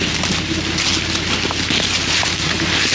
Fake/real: real